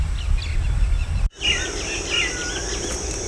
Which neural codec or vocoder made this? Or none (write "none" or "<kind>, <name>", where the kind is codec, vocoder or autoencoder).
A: none